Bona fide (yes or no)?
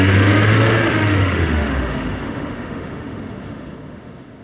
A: no